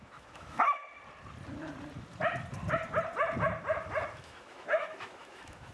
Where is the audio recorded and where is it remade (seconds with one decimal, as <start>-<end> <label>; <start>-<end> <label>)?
0.0-0.8 remade; 0.8-4.2 recorded; 4.2-5.7 remade